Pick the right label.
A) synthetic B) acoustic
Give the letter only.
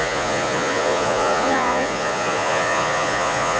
A